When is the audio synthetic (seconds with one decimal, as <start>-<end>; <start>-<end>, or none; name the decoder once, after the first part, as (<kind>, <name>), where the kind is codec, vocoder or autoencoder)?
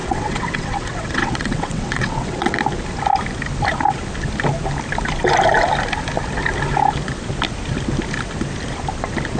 0.0-2.6 (vocoder, WaveNeXt)